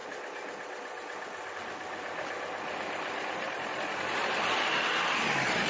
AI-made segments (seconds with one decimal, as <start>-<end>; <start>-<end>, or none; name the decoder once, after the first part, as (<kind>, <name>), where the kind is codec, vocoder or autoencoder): none